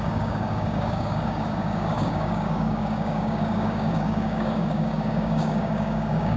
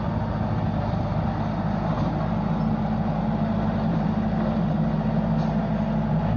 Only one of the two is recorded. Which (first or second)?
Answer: second